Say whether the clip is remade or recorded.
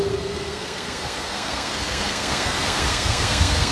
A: remade